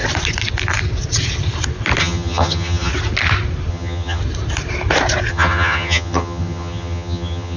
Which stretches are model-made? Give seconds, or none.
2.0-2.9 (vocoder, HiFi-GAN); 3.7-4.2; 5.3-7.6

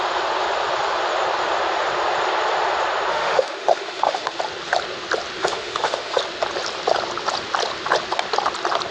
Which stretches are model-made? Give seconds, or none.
3.1-4.4 (autoencoder, DAC-VAE); 5.4-6.2